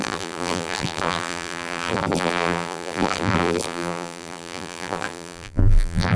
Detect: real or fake fake